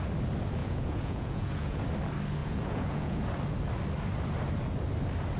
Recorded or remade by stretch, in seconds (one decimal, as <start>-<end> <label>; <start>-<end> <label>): 0.0-0.6 recorded; 0.6-1.8 remade; 1.8-2.4 recorded; 2.4-3.2 remade; 3.2-5.4 recorded